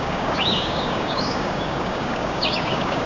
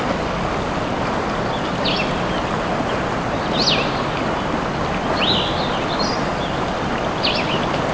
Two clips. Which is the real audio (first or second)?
second